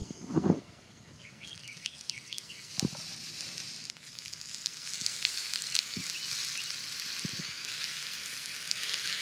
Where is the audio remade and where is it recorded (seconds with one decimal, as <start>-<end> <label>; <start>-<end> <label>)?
0.0-2.7 remade; 2.7-3.9 recorded; 3.9-6.0 remade; 6.0-7.4 recorded; 7.4-9.2 remade